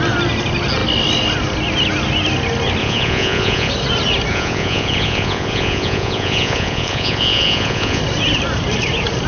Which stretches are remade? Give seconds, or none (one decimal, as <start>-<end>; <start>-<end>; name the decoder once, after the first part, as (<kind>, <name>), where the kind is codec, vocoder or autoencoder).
2.8-3.7 (vocoder, Vocos); 4.3-8.0

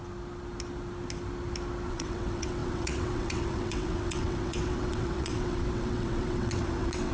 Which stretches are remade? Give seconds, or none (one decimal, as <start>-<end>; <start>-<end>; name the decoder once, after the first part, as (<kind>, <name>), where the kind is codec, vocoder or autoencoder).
1.9-7.1 (vocoder, WaveNeXt)